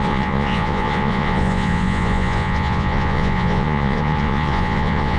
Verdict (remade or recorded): remade